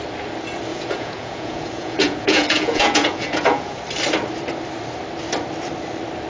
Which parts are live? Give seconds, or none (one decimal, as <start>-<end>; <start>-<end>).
0.0-0.7; 3.8-6.3